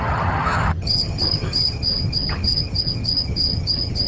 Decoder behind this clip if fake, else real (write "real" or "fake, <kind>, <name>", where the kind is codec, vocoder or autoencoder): fake, vocoder, HiFi-GAN